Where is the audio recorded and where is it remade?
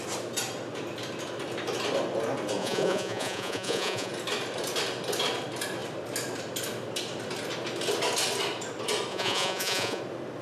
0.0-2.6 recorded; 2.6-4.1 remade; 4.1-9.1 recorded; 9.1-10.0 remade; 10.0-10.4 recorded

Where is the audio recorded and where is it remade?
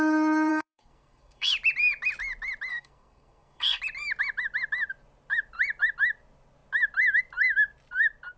0.0-0.5 recorded; 0.5-1.5 remade; 1.5-2.7 recorded; 2.7-3.8 remade; 3.8-8.4 recorded